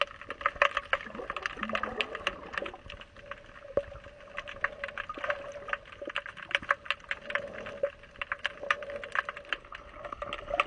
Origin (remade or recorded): recorded